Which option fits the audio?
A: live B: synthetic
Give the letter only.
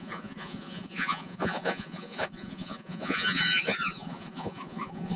B